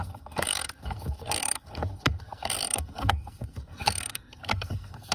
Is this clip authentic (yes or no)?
no